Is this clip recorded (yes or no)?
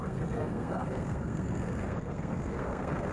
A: no